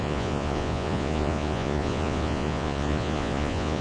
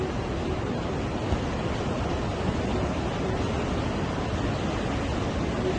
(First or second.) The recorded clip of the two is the second